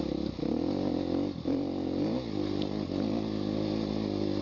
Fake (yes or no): no